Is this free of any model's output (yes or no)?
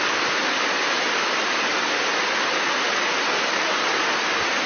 yes